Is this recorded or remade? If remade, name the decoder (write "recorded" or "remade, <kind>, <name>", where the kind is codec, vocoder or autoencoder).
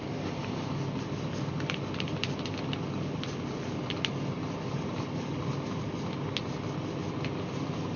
recorded